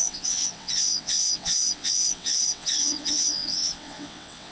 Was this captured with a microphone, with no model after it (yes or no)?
no